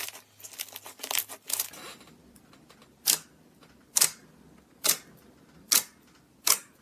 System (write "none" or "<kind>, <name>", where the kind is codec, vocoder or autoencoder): none